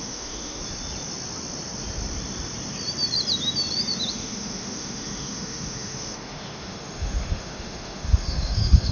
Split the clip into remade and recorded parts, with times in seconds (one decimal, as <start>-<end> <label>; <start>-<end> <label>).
0.0-0.6 remade; 0.6-4.1 recorded; 4.1-8.9 remade